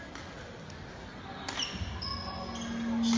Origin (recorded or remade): recorded